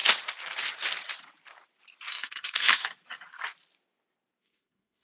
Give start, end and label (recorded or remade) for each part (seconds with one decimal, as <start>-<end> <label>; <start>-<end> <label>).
0.0-2.1 recorded; 2.1-2.8 remade; 2.8-4.4 recorded; 4.4-5.0 remade